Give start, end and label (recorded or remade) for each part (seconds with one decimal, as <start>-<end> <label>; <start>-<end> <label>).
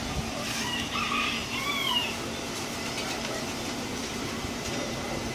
0.0-5.3 remade